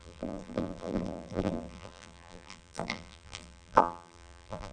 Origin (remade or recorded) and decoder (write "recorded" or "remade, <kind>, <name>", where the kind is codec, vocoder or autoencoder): remade, vocoder, BigVGAN v2